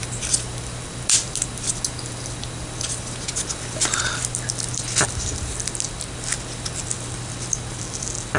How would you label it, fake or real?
real